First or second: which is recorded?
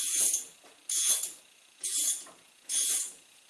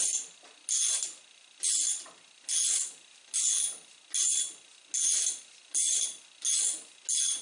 second